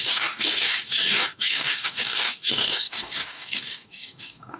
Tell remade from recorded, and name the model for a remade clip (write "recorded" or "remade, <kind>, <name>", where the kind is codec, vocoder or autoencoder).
remade, codec, DAC